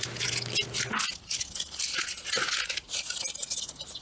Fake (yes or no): no